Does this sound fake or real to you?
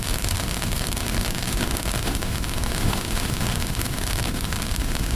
fake